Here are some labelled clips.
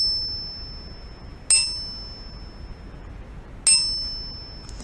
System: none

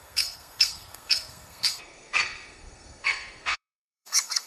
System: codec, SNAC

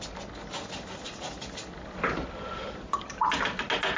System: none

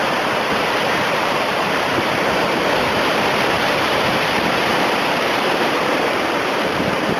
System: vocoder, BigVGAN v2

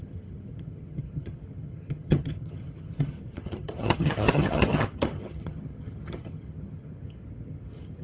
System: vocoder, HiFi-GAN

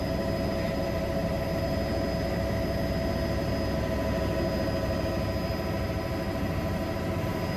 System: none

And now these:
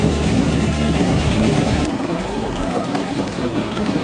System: codec, SNAC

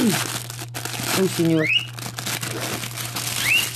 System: none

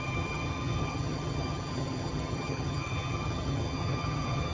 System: vocoder, HiFi-GAN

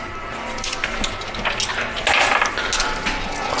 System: none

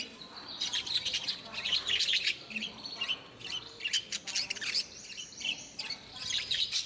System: vocoder, BigVGAN v2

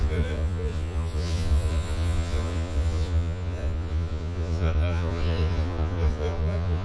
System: vocoder, Vocos